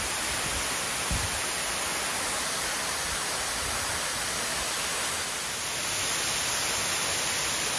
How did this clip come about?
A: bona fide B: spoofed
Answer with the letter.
A